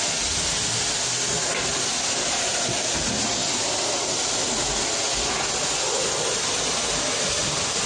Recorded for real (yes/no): yes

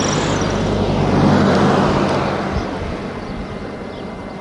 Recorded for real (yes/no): yes